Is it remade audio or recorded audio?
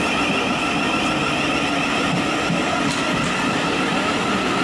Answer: recorded